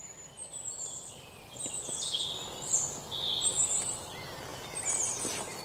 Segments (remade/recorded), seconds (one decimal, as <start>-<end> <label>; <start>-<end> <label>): 0.0-5.6 recorded